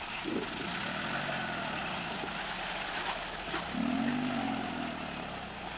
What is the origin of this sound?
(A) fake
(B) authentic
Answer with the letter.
B